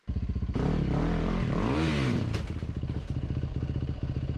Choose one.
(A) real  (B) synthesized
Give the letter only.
A